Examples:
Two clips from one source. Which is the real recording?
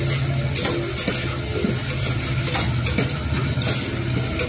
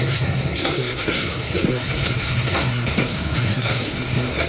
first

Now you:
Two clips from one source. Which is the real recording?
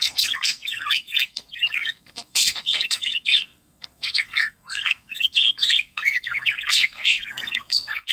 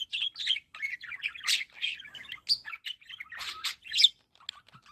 second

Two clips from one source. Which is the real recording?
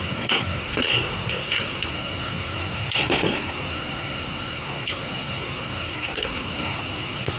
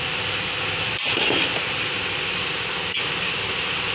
second